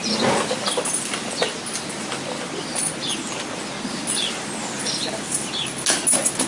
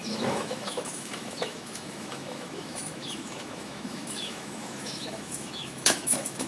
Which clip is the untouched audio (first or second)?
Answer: first